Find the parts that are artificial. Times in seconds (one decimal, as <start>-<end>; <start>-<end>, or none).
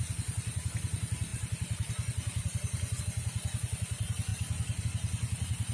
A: 1.3-3.0